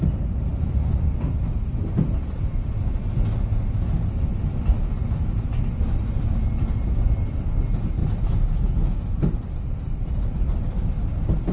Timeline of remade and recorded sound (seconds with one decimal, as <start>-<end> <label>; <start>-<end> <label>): 0.0-8.0 recorded; 8.0-11.0 remade; 11.0-11.5 recorded